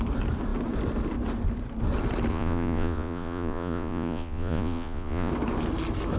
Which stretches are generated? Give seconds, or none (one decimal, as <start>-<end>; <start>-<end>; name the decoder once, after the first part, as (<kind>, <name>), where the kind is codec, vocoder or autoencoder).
2.3-5.3 (vocoder, Vocos)